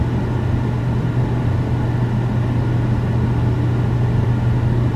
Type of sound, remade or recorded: recorded